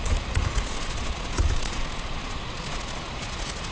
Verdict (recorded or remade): remade